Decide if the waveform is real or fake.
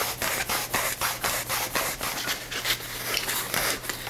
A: real